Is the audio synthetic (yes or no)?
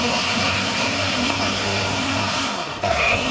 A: yes